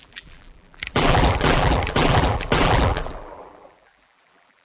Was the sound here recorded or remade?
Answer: remade